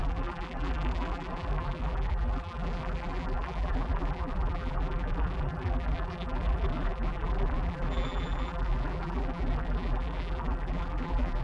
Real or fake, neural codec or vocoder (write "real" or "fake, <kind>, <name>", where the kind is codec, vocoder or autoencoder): fake, vocoder, BigVGAN v2